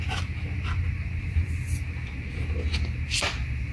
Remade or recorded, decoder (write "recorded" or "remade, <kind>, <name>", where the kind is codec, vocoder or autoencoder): recorded